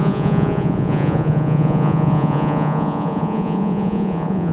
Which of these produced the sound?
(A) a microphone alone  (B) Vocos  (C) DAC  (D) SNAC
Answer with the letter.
B